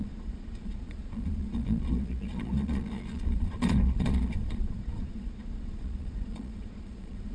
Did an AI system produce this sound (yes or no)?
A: yes